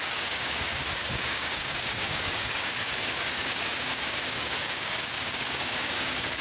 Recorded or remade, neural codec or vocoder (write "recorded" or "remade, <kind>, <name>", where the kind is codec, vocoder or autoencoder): remade, codec, DAC